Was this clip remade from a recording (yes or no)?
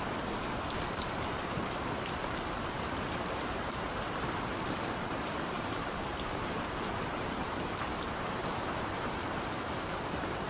yes